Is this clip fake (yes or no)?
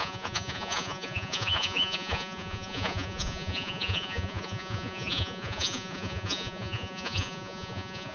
yes